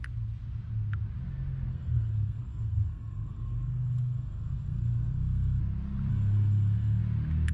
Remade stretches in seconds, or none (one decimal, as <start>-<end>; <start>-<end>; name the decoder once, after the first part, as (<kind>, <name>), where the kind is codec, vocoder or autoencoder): 1.7-5.6 (codec, SNAC); 6.1-7.0